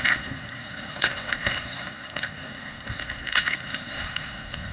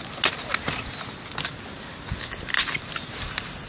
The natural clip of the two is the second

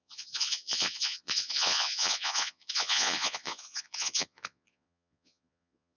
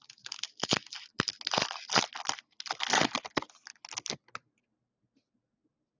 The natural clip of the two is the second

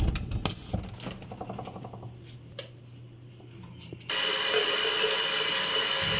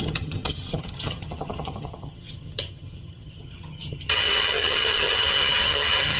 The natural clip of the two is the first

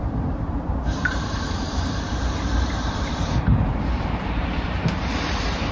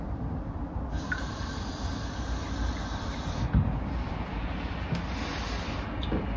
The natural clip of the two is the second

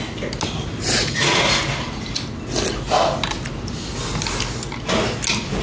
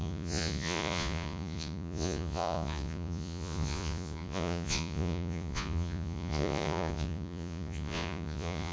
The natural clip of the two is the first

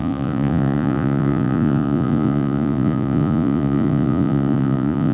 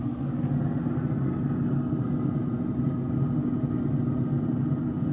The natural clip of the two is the second